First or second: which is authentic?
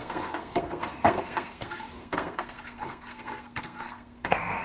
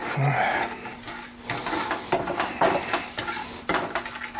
second